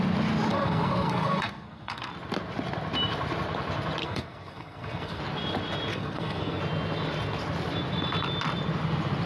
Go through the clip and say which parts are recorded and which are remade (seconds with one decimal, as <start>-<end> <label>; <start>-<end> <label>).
0.0-0.5 recorded; 0.5-2.1 remade; 2.1-4.0 recorded; 4.0-5.2 remade; 5.2-5.9 recorded; 5.9-6.6 remade; 6.6-9.3 recorded